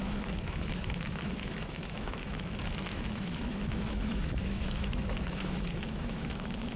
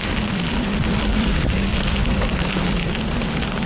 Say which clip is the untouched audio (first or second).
second